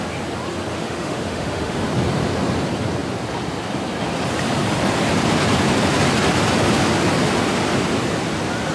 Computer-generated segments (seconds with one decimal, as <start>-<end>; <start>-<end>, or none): 0.7-1.9